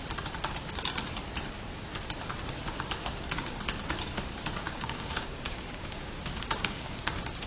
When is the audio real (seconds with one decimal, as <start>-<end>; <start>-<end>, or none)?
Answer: 0.0-4.6; 7.0-7.5